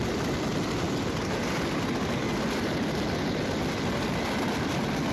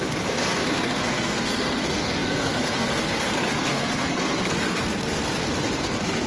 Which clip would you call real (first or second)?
first